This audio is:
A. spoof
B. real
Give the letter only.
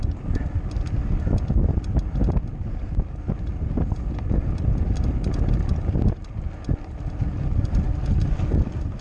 B